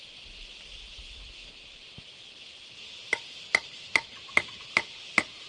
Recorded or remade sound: recorded